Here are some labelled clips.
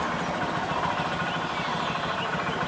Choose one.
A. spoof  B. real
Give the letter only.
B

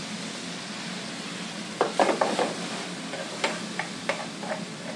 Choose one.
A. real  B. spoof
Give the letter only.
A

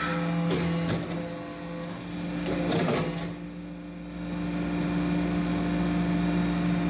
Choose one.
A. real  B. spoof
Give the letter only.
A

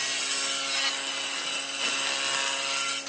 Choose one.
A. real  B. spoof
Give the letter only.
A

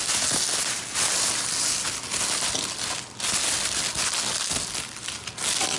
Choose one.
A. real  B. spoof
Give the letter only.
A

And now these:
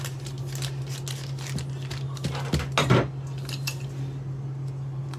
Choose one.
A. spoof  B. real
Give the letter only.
B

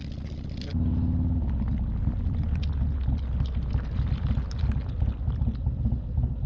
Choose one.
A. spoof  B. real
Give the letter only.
B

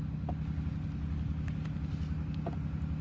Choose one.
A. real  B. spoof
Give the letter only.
A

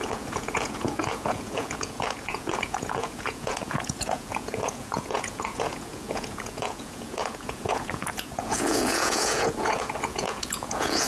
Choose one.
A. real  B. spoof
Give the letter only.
B